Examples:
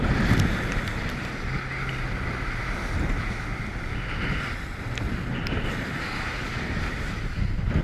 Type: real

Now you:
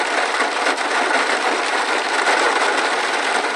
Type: real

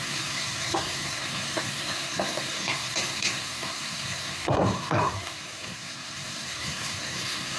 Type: fake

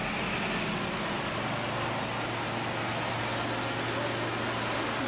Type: real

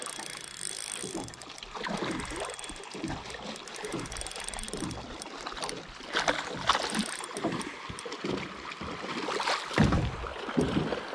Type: real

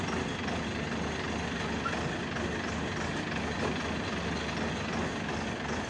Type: real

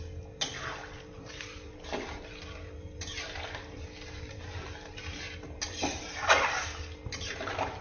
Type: real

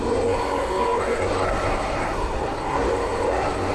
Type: fake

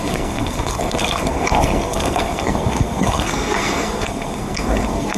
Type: fake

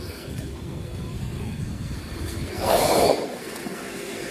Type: fake